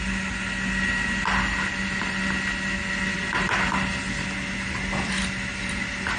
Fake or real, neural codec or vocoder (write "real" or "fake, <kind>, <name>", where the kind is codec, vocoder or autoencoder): real